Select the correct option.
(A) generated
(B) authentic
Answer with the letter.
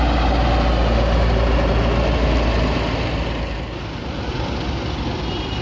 B